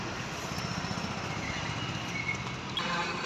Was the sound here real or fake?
real